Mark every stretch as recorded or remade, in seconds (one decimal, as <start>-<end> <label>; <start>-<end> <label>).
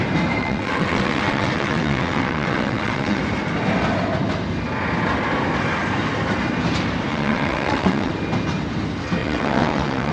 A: 0.0-0.4 recorded; 0.4-3.2 remade; 3.2-7.1 recorded; 7.1-8.1 remade; 8.1-9.2 recorded; 9.2-10.1 remade